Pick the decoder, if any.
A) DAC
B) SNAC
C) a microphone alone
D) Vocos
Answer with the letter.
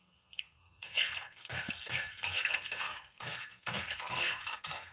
B